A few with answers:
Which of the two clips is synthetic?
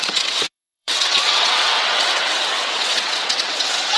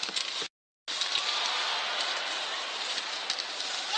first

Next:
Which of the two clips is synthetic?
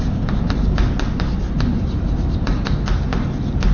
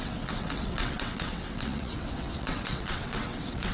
second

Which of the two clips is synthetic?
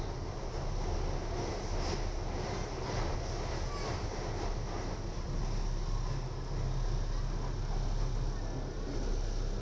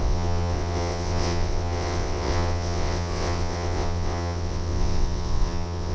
second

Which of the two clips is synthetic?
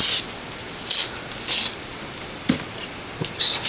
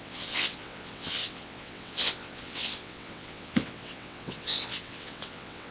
second